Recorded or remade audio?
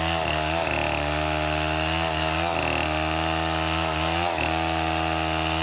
recorded